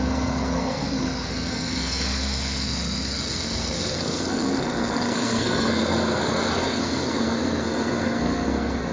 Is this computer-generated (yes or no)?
yes